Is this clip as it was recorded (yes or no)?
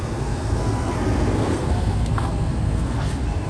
no